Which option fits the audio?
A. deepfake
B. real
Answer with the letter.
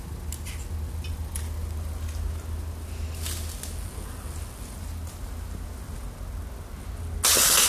B